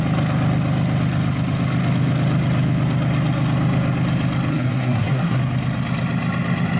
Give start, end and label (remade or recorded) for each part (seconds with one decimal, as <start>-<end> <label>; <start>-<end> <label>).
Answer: 0.0-4.5 recorded; 4.5-5.4 remade; 5.4-6.8 recorded